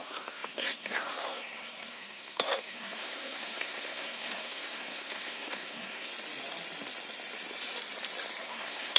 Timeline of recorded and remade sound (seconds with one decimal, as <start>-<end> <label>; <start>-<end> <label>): 0.0-6.1 remade; 6.1-8.4 recorded; 8.4-9.0 remade